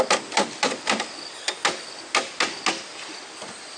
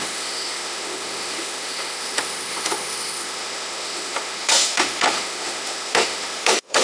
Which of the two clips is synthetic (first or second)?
second